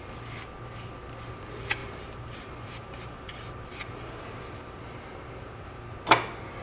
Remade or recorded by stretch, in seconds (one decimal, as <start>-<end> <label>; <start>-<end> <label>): 0.0-1.8 recorded; 1.8-5.8 remade; 5.8-6.6 recorded